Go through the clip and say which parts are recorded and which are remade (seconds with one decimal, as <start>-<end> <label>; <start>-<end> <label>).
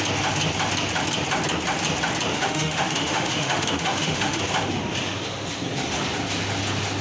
0.0-2.3 recorded; 2.3-4.4 remade; 4.4-7.0 recorded